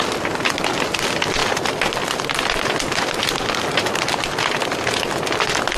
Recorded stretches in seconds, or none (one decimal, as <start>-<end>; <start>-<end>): 0.0-5.8